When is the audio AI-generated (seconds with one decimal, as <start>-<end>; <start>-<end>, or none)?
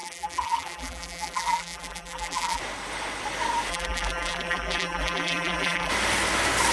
0.0-2.6; 3.7-5.9